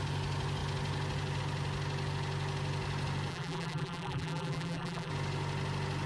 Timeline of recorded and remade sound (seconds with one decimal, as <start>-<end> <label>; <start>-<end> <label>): 0.0-3.3 recorded; 3.3-5.1 remade; 5.1-6.1 recorded